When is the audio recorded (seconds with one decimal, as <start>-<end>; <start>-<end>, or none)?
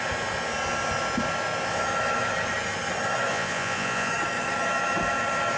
0.0-3.3; 4.1-5.6